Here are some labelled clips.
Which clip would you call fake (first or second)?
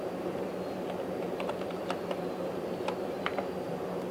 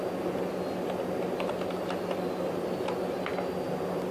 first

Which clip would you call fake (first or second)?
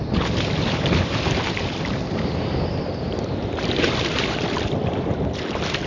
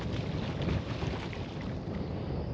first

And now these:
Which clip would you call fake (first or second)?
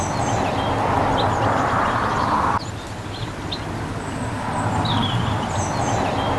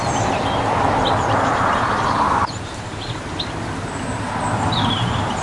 second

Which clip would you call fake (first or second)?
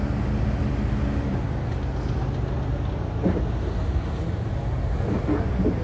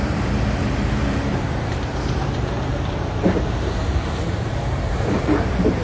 second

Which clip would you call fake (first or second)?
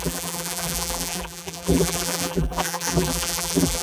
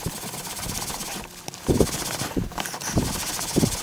first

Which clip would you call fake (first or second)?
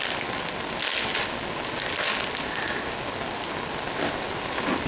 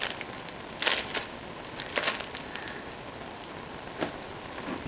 second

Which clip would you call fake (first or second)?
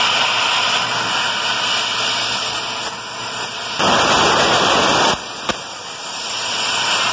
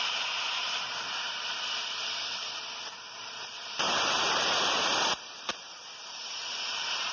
second